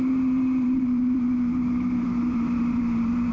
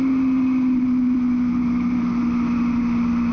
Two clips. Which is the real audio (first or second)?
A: second